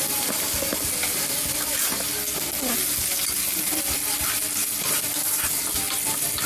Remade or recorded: recorded